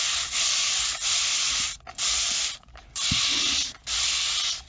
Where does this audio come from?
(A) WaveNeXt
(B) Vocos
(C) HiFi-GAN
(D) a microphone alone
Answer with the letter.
D